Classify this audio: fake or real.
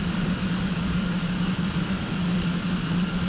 fake